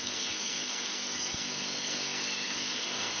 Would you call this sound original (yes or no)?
no